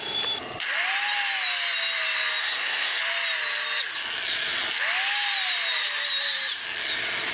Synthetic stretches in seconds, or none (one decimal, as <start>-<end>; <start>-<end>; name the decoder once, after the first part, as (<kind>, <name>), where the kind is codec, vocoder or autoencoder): 2.4-3.0 (codec, SNAC)